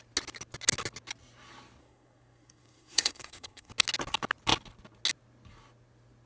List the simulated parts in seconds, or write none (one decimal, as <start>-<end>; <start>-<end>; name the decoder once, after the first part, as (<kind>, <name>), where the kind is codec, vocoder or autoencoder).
1.8-3.7 (codec, SNAC)